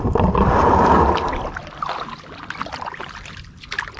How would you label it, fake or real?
real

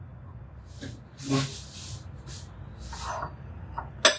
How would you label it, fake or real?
real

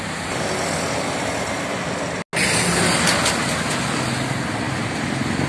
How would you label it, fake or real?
real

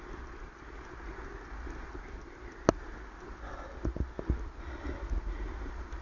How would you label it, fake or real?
real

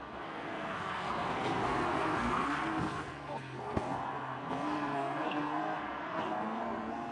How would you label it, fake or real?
fake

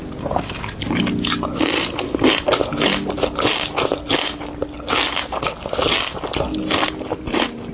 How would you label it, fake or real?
real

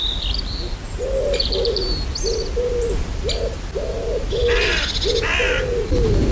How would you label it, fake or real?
real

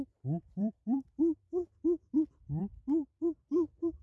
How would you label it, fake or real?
fake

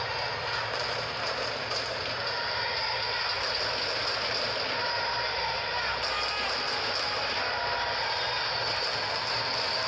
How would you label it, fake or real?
real